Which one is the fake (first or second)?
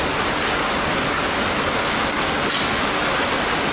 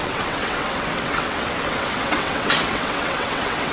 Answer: second